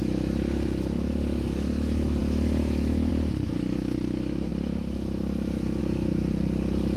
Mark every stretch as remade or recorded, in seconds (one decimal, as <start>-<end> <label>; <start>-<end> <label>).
0.0-6.2 remade; 6.2-7.0 recorded